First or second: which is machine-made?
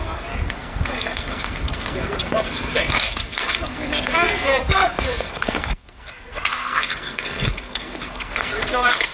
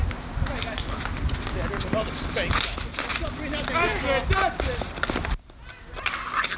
first